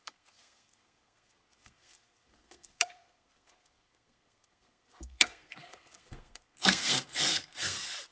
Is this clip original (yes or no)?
no